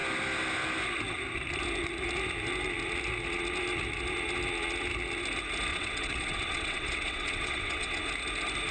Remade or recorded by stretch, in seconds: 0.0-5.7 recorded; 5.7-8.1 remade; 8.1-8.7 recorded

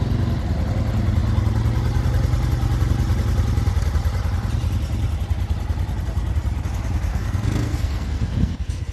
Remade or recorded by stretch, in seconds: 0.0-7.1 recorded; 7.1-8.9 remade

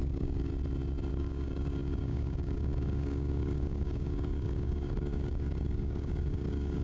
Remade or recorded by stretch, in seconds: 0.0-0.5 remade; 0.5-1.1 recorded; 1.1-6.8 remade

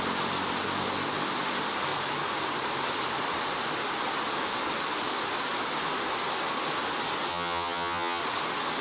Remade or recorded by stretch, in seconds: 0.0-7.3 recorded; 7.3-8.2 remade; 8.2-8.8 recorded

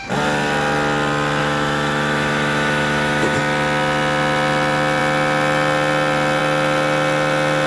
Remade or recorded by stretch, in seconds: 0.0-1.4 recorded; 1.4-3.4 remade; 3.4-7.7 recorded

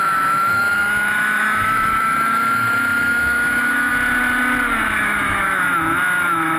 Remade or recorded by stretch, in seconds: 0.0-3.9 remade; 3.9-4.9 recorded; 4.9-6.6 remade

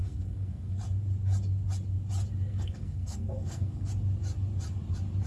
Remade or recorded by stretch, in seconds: 0.0-0.8 remade; 0.8-2.5 recorded; 2.5-3.9 remade; 3.9-5.3 recorded

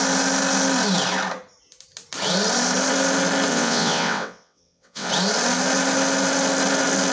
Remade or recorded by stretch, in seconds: 0.0-3.5 recorded; 3.5-5.1 remade; 5.1-7.1 recorded